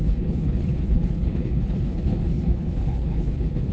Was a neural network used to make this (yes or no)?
yes